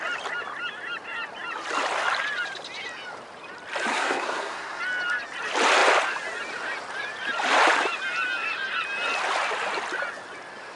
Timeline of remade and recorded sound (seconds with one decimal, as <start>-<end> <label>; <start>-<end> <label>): 0.0-3.9 recorded; 3.9-4.8 remade; 4.8-10.8 recorded